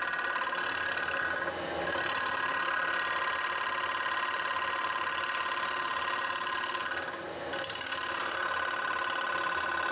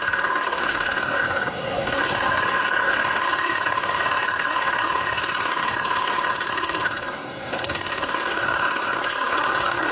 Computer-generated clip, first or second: second